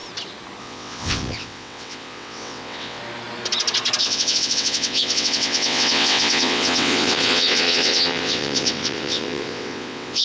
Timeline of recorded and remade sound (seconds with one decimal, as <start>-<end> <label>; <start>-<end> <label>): 0.0-0.6 recorded; 0.6-3.0 remade; 3.0-4.0 recorded; 4.0-10.2 remade